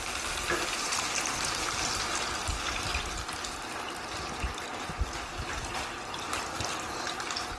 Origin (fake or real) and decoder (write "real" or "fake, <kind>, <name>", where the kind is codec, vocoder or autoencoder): real